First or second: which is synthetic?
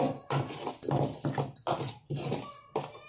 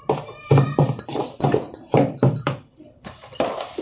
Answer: second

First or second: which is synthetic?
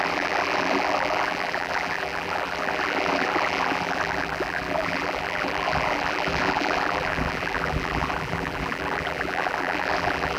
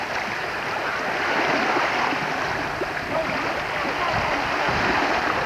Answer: first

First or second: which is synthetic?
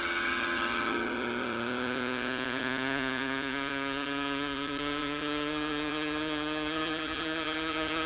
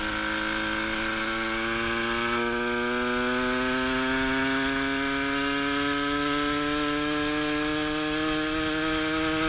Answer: first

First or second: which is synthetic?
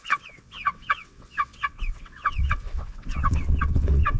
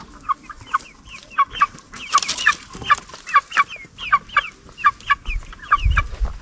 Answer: first